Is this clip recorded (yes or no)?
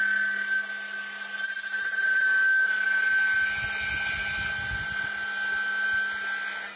yes